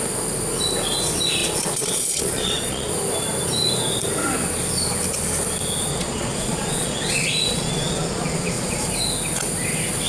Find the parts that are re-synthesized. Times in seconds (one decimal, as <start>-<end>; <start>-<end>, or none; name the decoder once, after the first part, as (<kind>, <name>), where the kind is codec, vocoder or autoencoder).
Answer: 1.4-2.9 (vocoder, Vocos); 5.9-8.9